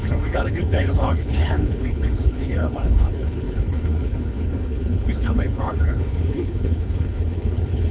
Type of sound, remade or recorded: remade